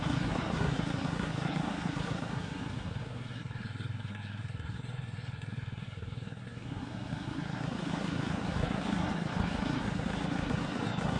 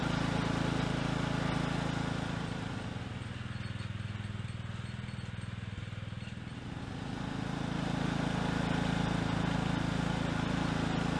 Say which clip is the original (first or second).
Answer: second